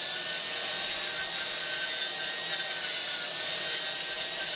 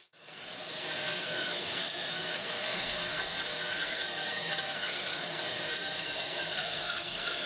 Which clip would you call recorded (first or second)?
first